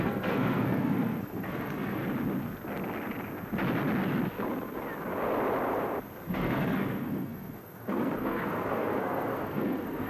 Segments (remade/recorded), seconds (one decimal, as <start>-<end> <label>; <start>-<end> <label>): 0.0-2.0 remade; 2.0-6.3 recorded; 6.3-10.1 remade